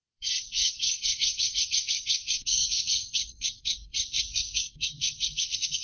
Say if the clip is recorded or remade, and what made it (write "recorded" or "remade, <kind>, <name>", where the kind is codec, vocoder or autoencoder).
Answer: remade, codec, SNAC